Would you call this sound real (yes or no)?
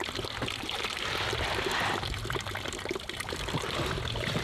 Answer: yes